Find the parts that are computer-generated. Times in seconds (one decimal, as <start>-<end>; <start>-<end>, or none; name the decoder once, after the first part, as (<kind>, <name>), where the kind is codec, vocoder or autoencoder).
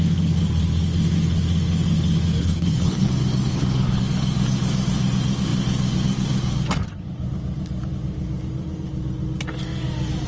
2.4-3.1 (codec, HILCodec); 3.5-4.0